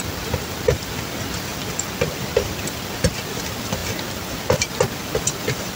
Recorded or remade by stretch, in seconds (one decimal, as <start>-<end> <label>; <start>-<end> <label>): 0.0-5.8 recorded